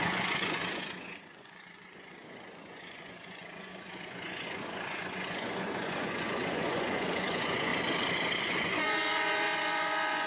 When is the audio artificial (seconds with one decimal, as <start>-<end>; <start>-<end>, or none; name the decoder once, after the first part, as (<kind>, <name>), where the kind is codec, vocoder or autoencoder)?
0.0-7.7 (vocoder, Vocos); 8.4-10.3